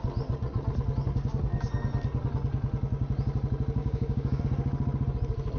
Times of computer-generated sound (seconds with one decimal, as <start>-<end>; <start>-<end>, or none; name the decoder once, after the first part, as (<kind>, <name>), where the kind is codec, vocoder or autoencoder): 3.8-4.4 (codec, DAC)